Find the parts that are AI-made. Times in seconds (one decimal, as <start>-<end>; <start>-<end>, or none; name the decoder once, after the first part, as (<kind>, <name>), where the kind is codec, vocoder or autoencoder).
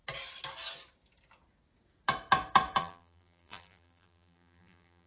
2.8-5.1 (vocoder, BigVGAN v2)